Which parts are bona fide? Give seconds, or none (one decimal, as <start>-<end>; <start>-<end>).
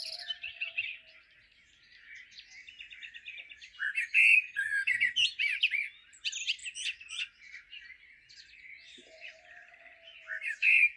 0.0-11.0